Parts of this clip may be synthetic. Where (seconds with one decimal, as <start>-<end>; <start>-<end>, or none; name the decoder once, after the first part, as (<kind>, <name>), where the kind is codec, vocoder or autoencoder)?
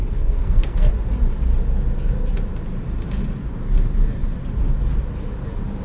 0.0-0.9 (codec, SNAC)